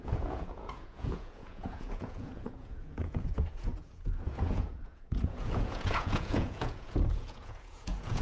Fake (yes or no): yes